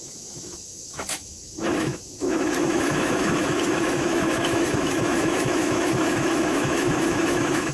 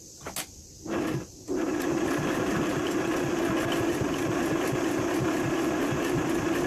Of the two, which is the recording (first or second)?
second